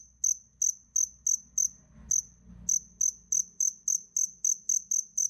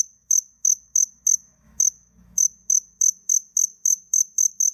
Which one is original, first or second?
first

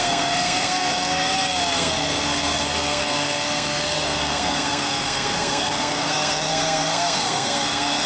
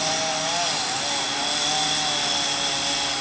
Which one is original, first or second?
second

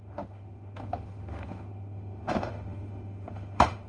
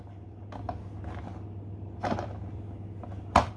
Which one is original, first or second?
second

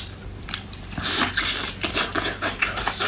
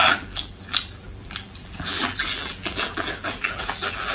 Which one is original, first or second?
first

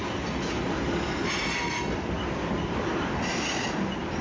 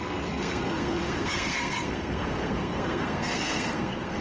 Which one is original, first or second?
first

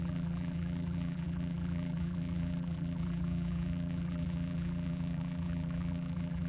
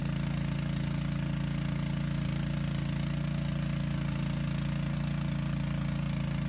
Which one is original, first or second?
second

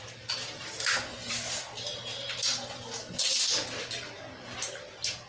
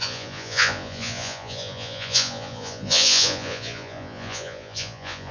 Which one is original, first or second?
first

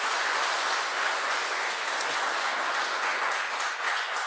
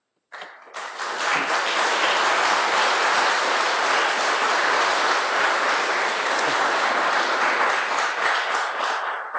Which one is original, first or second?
second